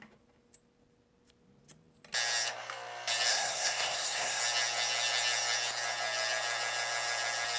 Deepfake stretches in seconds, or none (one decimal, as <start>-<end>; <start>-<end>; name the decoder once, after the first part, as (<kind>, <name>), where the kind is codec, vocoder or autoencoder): 3.3-4.4 (codec, SNAC)